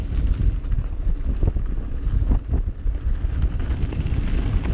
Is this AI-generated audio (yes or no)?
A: no